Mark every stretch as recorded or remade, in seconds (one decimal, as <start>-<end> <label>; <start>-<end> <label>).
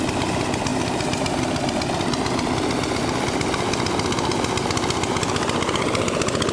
0.0-0.7 recorded; 0.7-1.4 remade; 1.4-6.5 recorded